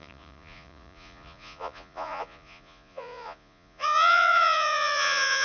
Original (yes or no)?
no